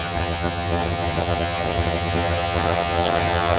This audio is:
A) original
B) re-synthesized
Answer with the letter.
B